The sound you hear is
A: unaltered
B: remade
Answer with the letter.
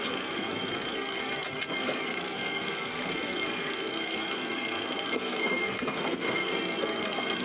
B